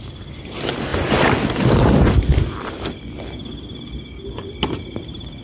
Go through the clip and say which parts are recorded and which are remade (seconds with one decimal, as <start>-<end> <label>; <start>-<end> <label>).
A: 0.0-5.4 recorded